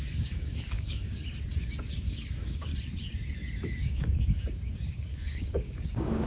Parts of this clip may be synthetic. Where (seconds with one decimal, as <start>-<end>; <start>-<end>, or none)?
0.0-1.2; 1.8-2.7; 3.8-6.3